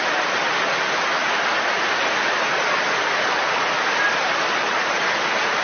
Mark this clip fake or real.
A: real